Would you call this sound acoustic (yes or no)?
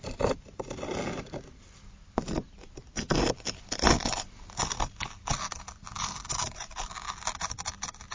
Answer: yes